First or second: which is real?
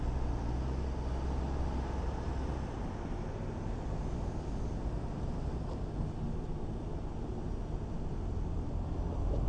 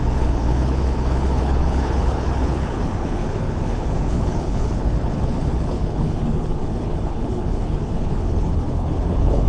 first